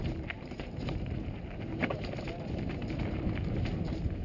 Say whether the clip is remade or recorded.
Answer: remade